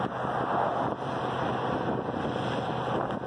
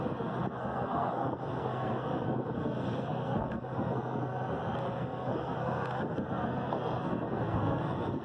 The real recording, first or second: first